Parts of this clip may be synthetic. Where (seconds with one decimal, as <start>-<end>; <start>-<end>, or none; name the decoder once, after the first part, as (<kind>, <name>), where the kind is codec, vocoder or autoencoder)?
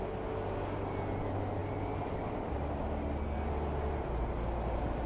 1.6-2.8 (vocoder, BigVGAN v2)